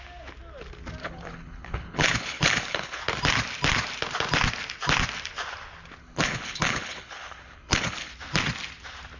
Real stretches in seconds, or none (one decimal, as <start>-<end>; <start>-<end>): 0.0-1.0; 3.0-6.0; 8.1-9.2